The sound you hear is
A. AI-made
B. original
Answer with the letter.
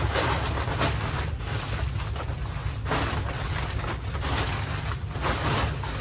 B